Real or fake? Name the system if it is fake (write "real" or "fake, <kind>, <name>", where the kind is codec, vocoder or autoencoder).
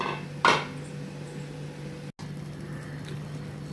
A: real